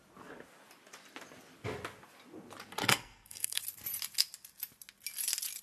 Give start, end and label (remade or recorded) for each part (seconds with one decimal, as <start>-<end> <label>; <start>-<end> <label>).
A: 0.0-2.8 recorded; 2.8-3.6 remade; 3.6-5.6 recorded